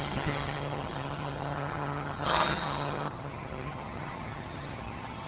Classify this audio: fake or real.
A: fake